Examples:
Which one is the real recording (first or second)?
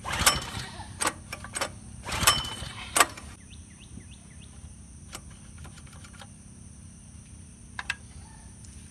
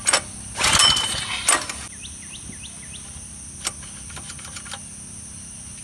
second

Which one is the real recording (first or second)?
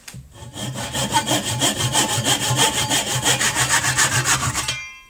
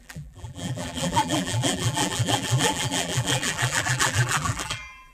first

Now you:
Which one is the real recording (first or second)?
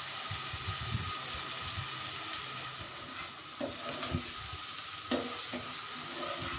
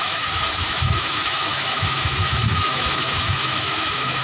first